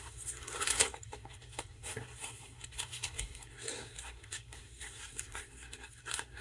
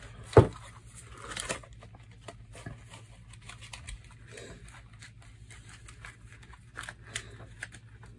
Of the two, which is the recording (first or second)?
second